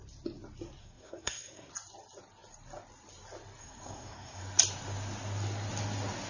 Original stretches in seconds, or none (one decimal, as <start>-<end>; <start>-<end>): 0.0-0.8; 1.7-3.6; 4.4-6.3